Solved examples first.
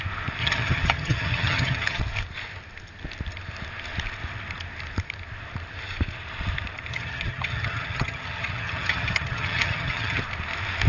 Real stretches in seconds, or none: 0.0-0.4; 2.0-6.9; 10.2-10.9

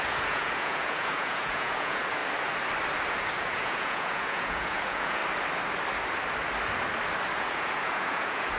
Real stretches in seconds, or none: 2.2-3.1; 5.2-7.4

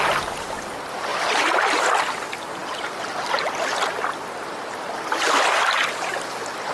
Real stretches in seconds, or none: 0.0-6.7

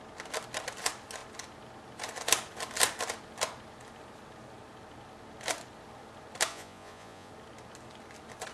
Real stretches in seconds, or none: 0.0-6.5; 7.3-8.5

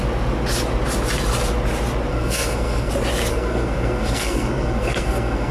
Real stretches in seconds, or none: 0.0-2.1; 2.9-3.3

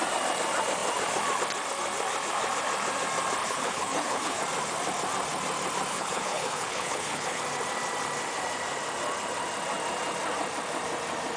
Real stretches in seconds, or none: 0.0-3.4; 4.4-5.9; 7.4-11.4